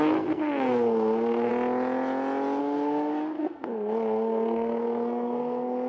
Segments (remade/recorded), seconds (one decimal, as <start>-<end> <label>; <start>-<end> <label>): 0.0-1.5 remade; 1.5-2.6 recorded; 2.6-5.9 remade